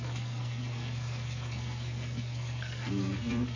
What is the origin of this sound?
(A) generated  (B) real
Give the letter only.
A